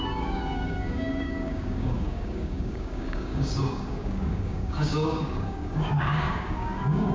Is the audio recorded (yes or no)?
no